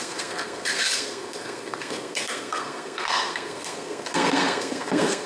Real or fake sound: fake